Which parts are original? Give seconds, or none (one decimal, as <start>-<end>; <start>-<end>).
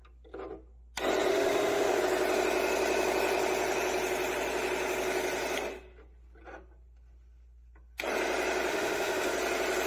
0.0-1.3; 2.0-8.7; 9.3-9.9